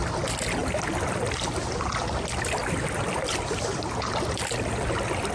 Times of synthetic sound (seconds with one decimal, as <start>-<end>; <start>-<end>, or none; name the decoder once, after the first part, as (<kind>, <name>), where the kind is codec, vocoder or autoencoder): none